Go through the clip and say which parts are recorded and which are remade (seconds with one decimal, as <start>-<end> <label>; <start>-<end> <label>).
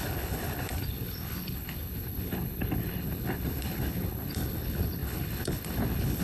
0.0-6.2 remade